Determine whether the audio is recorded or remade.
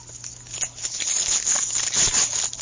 recorded